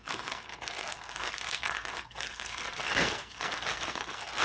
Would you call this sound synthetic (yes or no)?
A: yes